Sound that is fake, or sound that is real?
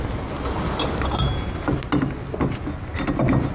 real